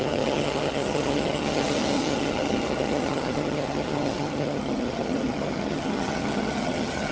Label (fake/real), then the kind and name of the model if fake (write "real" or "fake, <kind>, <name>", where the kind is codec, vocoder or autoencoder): fake, vocoder, HiFi-GAN